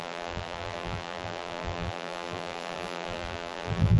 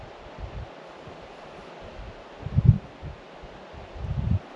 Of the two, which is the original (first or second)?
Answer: second